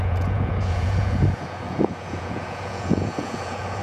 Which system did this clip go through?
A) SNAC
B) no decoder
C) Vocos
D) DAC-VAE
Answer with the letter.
C